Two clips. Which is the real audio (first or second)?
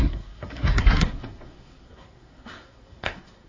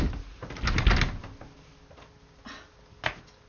second